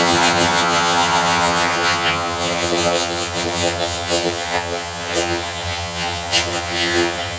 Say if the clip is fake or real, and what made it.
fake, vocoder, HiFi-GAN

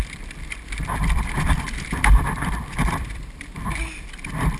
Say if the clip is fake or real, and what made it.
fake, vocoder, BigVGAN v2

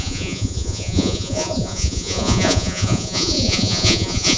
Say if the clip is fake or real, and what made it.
fake, vocoder, Vocos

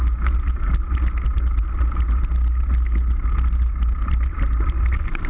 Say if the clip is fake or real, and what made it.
real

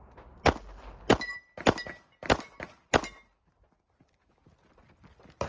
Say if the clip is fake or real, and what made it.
real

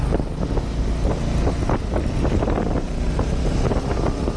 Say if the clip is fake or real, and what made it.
real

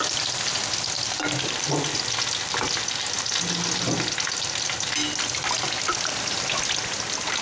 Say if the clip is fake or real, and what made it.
real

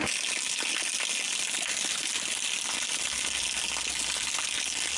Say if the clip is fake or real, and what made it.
real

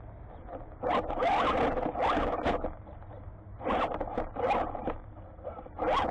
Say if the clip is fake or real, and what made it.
real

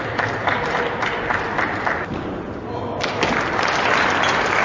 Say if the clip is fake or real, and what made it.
real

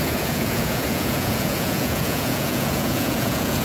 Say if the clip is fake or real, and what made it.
fake, vocoder, Vocos